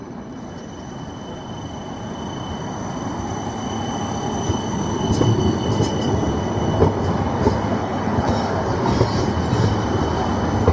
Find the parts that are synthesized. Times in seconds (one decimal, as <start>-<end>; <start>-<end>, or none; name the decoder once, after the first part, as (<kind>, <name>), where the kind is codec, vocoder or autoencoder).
7.8-8.3 (codec, HILCodec)